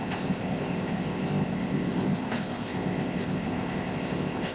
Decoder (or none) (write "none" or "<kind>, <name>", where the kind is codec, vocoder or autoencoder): codec, ZipCodec